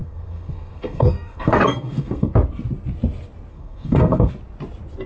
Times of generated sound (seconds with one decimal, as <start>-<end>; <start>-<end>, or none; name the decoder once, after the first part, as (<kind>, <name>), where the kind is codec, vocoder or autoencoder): 0.0-2.3 (codec, SNAC); 3.5-4.3